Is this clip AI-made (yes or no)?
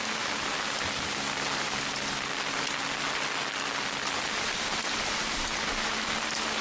no